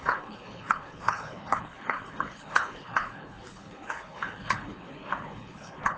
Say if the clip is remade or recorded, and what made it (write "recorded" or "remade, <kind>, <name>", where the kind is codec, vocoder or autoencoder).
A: remade, codec, HILCodec